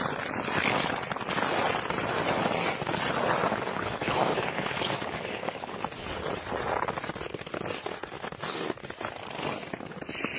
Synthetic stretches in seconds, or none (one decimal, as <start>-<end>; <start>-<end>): 3.4-5.8